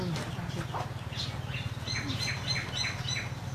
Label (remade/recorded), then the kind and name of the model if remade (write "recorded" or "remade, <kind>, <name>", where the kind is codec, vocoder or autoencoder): recorded